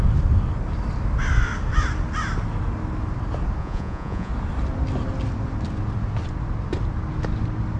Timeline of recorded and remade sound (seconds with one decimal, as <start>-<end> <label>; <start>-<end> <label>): 0.0-3.6 recorded; 3.6-4.3 remade; 4.3-7.8 recorded